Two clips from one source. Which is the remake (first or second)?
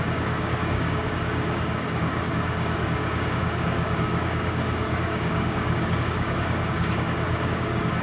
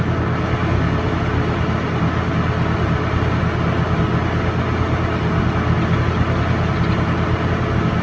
first